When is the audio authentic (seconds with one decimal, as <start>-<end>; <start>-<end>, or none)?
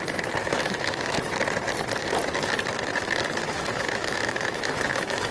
0.0-0.4; 1.2-3.4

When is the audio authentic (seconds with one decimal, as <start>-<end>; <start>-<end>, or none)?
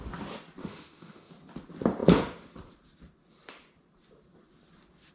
0.0-0.6; 1.3-5.1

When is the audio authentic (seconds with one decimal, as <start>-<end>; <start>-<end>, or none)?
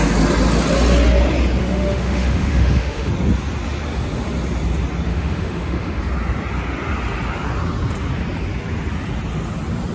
0.0-1.6; 3.1-5.1; 6.0-9.9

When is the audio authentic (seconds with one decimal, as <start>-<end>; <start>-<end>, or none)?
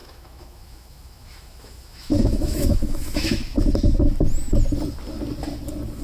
3.6-6.0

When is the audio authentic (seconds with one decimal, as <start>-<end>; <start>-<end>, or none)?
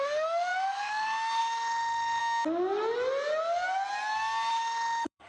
2.2-4.5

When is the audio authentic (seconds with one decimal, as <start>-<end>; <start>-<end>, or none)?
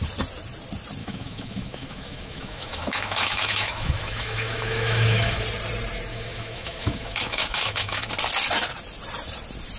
0.0-1.0; 5.4-6.1; 8.1-9.8